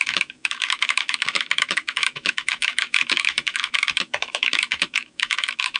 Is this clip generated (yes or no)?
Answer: yes